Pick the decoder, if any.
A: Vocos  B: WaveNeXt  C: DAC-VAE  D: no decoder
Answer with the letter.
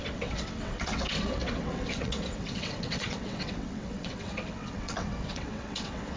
B